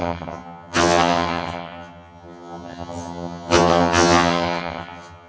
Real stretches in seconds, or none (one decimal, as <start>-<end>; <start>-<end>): none